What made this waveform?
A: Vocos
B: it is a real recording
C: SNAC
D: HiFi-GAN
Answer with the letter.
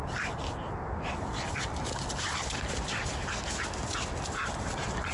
B